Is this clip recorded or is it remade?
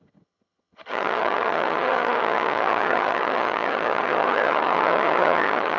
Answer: remade